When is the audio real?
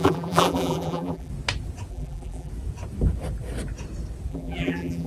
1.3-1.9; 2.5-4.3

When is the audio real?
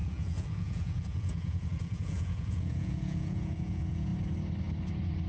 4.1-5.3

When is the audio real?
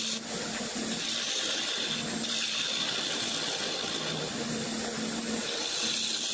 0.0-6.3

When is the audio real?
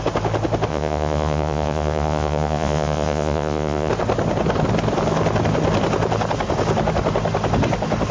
0.0-0.7; 3.9-8.1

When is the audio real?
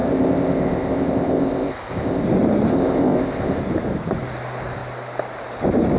2.2-2.7; 3.6-6.0